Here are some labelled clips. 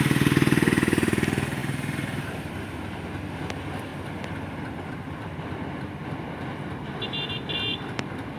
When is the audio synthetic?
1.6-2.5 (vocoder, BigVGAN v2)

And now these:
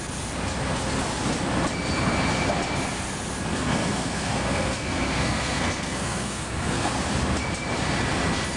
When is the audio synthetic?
3.5-6.9 (codec, SNAC)